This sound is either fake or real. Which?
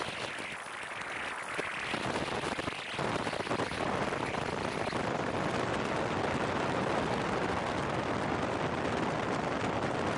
real